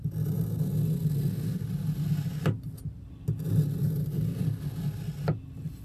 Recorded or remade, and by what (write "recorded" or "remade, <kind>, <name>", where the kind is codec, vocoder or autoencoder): recorded